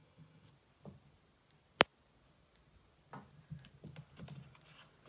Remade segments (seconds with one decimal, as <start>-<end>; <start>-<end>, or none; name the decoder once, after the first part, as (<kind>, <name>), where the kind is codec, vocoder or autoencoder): 0.0-0.5 (vocoder, HiFi-GAN)